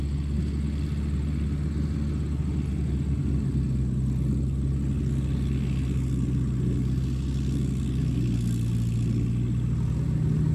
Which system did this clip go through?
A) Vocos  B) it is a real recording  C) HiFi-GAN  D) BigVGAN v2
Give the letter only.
B